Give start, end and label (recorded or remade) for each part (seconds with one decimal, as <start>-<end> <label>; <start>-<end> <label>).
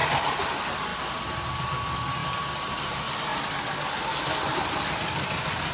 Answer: 0.0-5.7 recorded